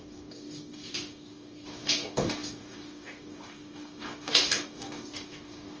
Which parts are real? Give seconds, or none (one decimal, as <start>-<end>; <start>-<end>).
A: none